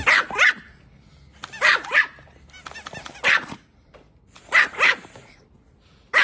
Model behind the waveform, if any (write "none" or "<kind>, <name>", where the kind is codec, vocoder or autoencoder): none